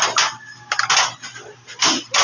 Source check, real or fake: real